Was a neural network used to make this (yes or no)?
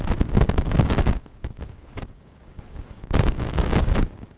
yes